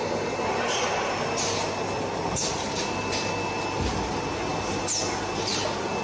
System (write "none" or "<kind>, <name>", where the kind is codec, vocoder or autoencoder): none